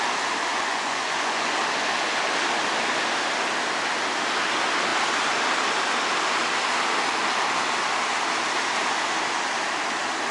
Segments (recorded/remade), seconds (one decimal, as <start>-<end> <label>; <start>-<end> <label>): 0.0-0.5 recorded; 0.5-1.5 remade; 1.5-10.3 recorded